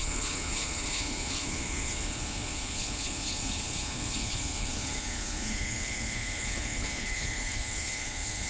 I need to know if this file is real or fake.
fake